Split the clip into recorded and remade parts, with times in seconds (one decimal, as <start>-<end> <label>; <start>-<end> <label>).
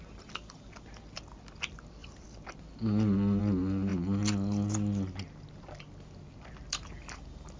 0.0-7.6 recorded